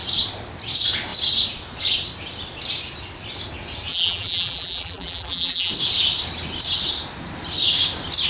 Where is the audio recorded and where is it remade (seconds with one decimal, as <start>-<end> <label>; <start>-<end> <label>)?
0.0-3.9 recorded; 3.9-5.7 remade; 5.7-8.3 recorded